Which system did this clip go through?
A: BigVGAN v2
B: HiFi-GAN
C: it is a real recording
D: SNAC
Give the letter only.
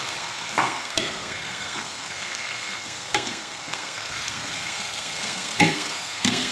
D